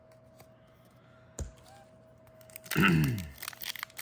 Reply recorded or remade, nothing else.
recorded